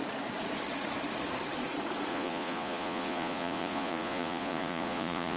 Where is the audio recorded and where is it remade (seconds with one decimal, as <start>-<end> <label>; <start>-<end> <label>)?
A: 0.0-2.1 recorded; 2.1-5.4 remade